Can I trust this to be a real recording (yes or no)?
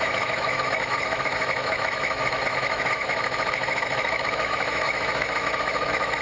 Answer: no